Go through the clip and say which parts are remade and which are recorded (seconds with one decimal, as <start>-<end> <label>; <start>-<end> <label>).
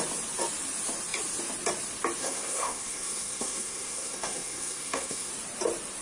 0.0-2.2 recorded; 2.2-5.3 remade; 5.3-6.0 recorded